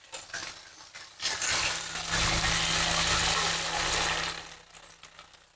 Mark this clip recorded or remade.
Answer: recorded